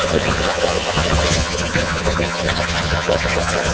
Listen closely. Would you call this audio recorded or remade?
remade